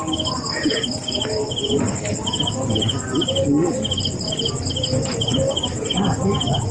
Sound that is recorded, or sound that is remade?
recorded